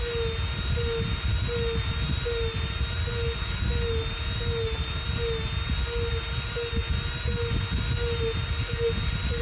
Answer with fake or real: real